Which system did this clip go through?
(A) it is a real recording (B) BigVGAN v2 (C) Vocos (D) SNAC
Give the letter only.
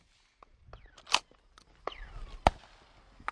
A